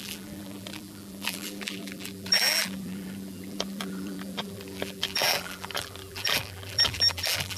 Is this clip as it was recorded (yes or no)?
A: no